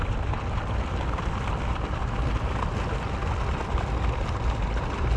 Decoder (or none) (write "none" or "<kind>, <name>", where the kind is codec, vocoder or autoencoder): none